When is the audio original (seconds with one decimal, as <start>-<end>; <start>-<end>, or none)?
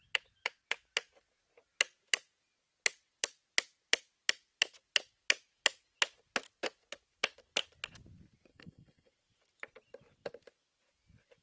0.0-8.5; 9.1-11.4